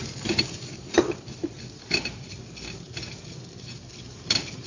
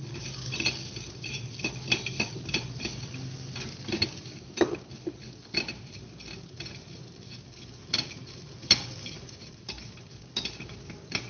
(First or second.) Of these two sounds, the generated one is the first